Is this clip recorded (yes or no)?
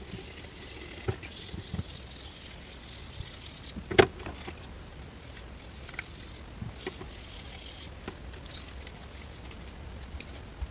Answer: yes